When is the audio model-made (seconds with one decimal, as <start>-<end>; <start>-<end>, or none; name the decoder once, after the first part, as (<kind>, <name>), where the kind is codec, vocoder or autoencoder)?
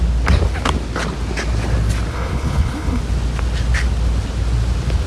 2.1-3.0 (codec, HILCodec)